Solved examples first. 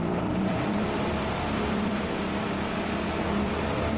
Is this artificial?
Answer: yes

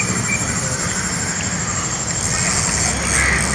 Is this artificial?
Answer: no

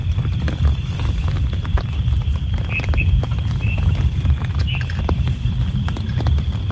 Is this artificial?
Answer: no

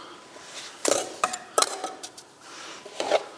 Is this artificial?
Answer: yes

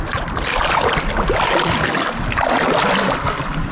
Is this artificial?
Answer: no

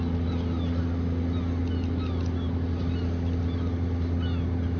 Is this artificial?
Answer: no